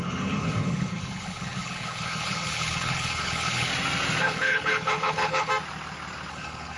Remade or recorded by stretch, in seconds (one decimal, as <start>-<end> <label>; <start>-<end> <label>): 0.0-3.7 remade; 3.7-4.2 recorded; 4.2-5.5 remade; 5.5-6.3 recorded; 6.3-6.8 remade